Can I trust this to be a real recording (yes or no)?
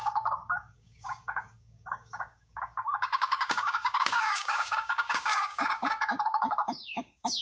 no